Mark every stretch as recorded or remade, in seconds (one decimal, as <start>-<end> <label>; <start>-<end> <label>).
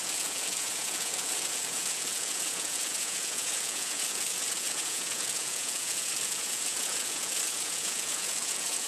0.0-8.9 remade